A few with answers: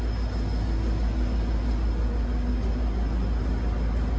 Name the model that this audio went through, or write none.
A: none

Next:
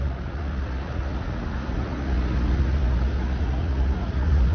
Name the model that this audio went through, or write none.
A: vocoder, Vocos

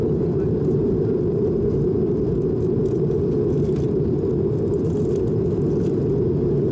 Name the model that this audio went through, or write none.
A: none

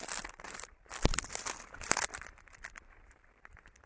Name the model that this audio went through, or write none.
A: vocoder, BigVGAN v2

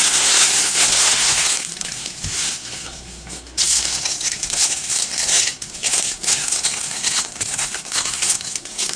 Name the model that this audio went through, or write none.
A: codec, SNAC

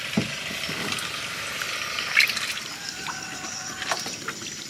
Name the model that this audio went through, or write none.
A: none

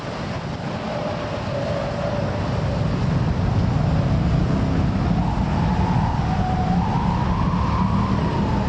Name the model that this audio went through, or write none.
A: none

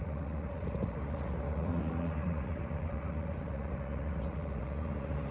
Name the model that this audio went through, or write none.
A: vocoder, Vocos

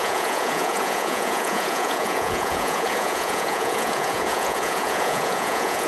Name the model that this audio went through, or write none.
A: vocoder, Vocos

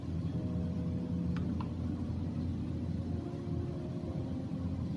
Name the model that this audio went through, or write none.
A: none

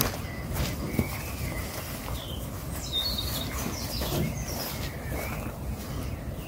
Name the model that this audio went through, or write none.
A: none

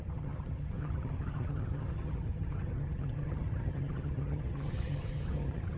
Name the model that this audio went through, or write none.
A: vocoder, HiFi-GAN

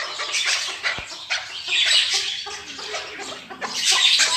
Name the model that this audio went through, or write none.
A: none